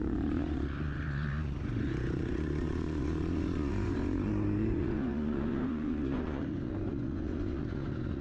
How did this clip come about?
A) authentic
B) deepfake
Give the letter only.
B